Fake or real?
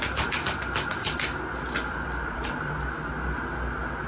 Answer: real